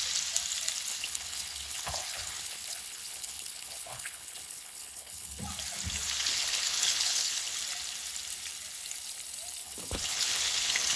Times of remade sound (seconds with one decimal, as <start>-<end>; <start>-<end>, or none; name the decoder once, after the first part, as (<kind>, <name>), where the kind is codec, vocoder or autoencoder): 0.9-5.4 (codec, HILCodec); 6.2-7.6; 9.6-11.0